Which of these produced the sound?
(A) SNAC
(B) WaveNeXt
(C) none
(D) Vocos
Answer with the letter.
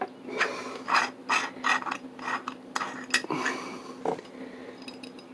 C